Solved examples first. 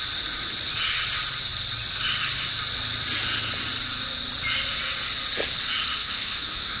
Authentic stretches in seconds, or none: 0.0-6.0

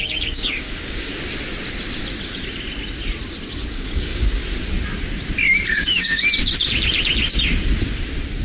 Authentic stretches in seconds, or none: 1.1-3.7; 4.4-5.7; 6.3-8.4

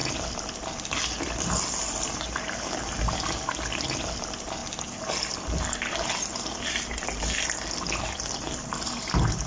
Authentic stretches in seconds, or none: 0.0-9.5

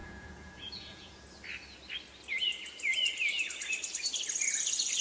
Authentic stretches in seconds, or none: 1.2-5.0

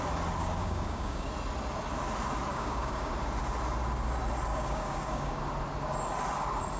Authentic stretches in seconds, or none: 0.0-0.4; 1.3-2.5; 3.1-4.5; 5.4-6.8

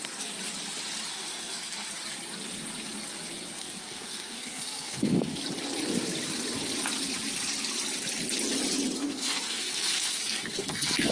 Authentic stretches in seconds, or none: 0.0-1.1; 1.9-3.6; 5.4-9.0

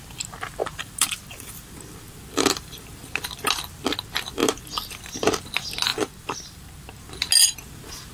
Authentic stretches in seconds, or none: 0.0-0.6; 3.6-5.9; 7.1-8.1